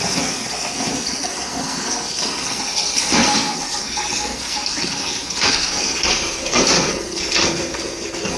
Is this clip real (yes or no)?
no